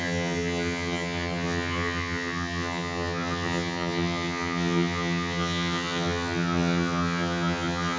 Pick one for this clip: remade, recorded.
remade